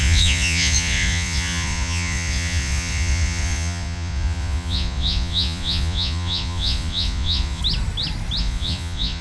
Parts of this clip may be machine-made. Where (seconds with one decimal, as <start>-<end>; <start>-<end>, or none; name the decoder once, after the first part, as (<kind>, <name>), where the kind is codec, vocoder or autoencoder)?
0.0-7.6 (vocoder, Vocos); 8.4-9.2